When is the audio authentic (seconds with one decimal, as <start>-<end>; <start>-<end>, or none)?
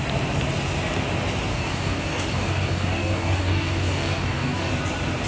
0.0-1.5; 4.7-5.3